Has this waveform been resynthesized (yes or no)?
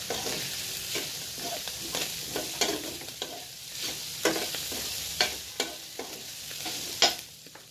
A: no